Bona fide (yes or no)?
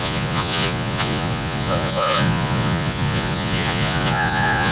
no